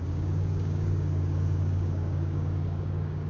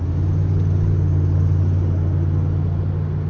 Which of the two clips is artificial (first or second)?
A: first